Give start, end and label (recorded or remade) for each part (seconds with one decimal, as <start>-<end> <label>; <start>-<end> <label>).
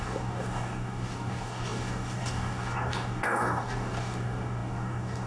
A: 0.0-5.3 remade